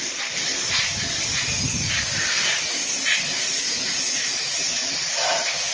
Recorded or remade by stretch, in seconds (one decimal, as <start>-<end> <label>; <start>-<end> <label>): 0.0-0.5 remade; 0.5-1.9 recorded; 1.9-2.8 remade; 2.8-4.3 recorded; 4.3-5.7 remade